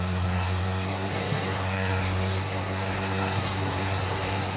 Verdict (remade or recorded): remade